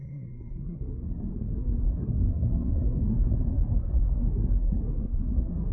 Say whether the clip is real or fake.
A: fake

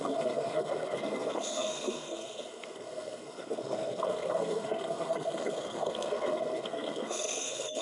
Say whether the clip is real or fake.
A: fake